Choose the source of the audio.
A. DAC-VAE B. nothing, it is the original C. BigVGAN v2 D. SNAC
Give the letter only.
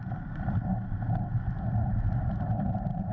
C